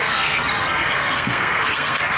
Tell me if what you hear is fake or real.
fake